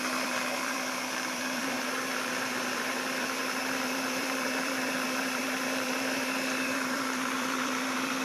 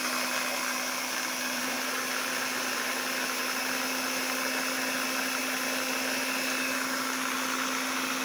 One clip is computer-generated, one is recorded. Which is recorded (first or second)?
second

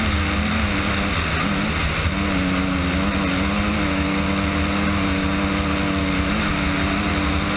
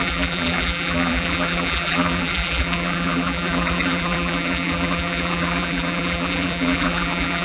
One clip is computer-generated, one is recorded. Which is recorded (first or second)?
first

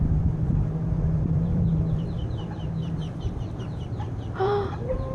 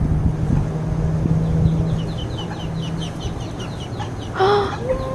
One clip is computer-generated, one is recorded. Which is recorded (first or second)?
second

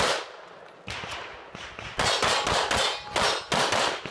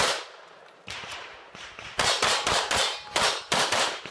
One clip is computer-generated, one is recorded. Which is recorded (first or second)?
first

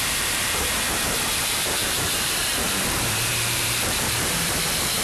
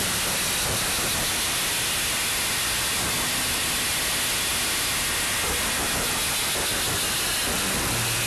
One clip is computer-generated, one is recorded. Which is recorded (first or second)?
second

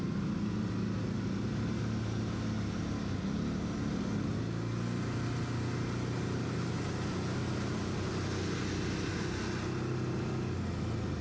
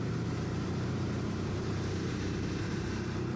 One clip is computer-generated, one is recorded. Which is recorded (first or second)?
first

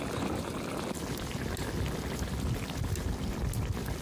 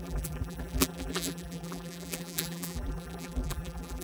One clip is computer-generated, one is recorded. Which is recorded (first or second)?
first